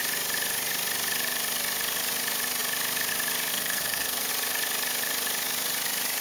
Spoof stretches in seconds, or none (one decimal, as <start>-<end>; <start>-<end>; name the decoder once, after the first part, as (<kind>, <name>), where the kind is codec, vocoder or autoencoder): 3.5-4.3 (codec, SNAC)